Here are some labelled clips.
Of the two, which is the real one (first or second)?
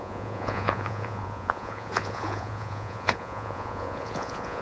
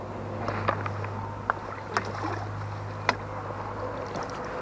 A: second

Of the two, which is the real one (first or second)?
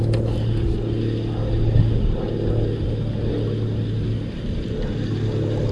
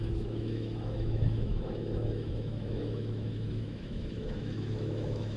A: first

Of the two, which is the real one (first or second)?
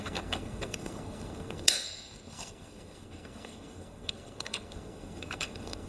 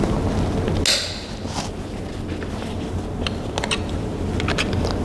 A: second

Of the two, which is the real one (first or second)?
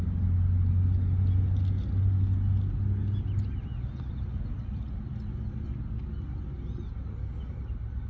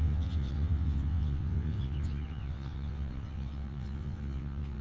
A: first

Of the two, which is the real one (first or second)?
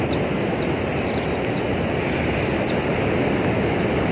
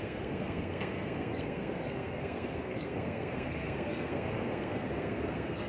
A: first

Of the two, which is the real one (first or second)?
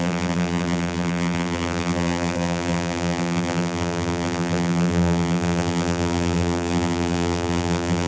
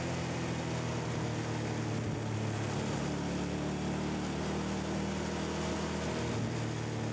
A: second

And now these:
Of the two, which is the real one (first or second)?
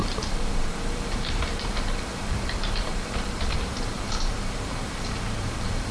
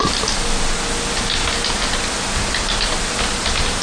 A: second